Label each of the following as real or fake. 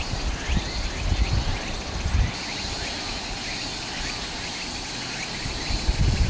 real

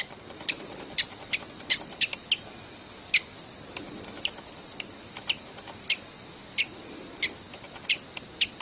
real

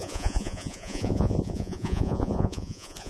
fake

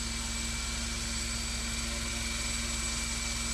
real